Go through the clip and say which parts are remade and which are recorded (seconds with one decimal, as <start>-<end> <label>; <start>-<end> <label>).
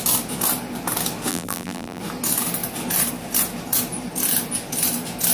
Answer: 0.0-1.3 recorded; 1.3-2.0 remade; 2.0-5.3 recorded